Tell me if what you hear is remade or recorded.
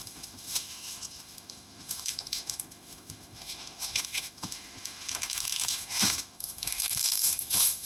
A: remade